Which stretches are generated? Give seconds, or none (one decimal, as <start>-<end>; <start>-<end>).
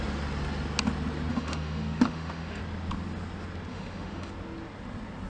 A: 1.3-2.6; 3.7-4.3